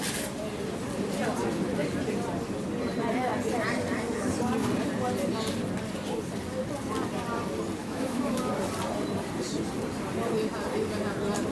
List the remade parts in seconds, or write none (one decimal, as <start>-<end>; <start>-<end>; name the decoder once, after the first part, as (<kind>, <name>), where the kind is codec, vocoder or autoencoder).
7.8-8.5 (autoencoder, DAC-VAE)